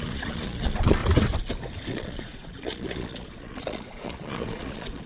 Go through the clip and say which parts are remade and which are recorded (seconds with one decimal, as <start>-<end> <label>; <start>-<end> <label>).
0.0-1.0 remade; 1.0-1.9 recorded; 1.9-5.1 remade